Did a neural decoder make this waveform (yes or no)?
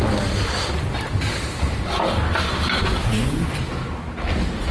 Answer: no